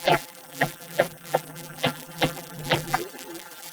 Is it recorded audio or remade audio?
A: remade